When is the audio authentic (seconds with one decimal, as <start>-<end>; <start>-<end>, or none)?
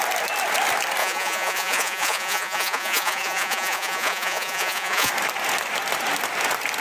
0.0-1.0; 5.1-6.8